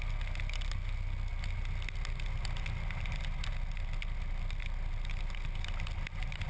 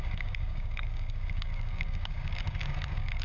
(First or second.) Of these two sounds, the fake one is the second